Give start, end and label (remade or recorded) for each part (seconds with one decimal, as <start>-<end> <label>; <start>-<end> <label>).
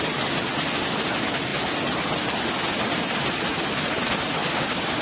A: 0.0-4.4 recorded; 4.4-5.0 remade